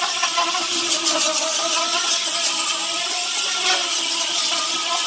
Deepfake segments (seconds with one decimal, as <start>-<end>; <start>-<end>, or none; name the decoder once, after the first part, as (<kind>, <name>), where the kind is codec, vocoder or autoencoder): none

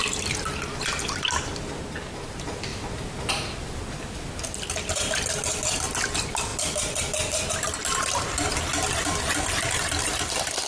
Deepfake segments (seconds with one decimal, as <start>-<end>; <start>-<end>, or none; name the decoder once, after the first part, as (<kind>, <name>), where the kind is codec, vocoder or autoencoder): none